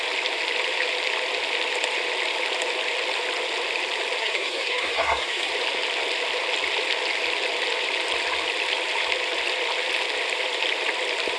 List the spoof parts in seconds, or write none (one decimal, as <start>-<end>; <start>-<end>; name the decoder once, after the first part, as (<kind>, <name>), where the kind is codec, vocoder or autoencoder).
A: 4.2-5.5 (codec, SNAC)